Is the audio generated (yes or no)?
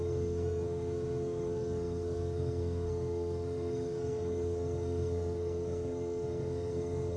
yes